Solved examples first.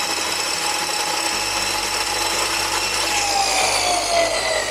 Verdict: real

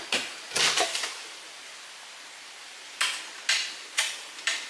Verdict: fake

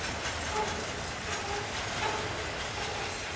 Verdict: real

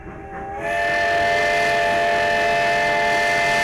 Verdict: real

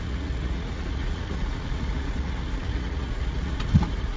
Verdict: fake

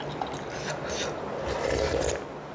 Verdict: real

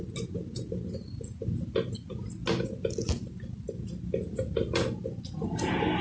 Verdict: real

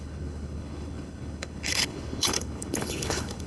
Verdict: fake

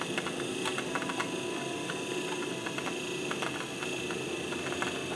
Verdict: real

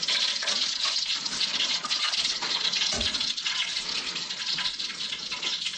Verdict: fake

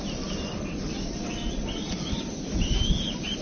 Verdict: real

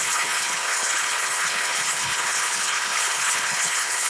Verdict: fake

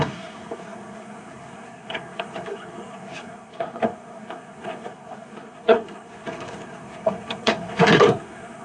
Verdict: fake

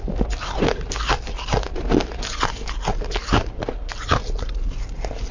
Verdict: real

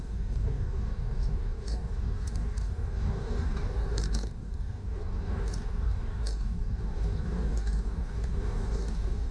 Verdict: fake